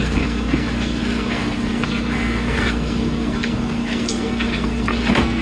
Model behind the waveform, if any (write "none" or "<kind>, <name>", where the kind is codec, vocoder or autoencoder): codec, SNAC